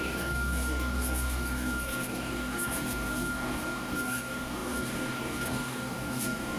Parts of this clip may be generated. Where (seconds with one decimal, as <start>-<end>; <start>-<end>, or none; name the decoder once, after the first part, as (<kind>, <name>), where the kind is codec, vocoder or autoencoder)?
0.0-6.6 (codec, DAC)